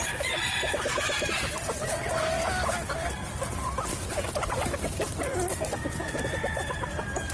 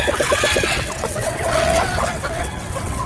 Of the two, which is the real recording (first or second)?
first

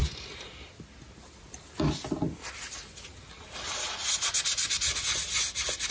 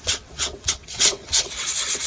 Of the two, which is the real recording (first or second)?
first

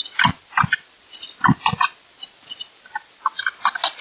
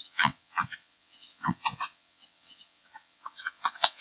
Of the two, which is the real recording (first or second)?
first